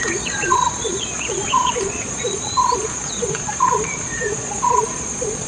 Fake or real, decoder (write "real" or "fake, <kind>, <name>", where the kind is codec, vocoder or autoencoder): fake, vocoder, Vocos